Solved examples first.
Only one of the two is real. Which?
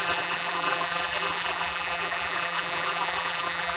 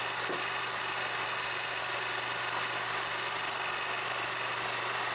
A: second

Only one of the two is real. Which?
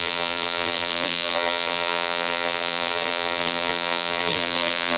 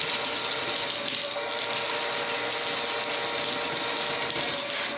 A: second